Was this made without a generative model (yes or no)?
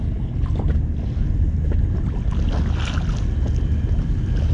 yes